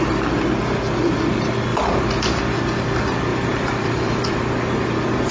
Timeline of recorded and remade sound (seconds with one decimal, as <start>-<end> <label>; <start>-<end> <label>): 0.0-1.7 recorded; 1.7-2.4 remade; 2.4-3.3 recorded; 3.3-4.4 remade; 4.4-5.3 recorded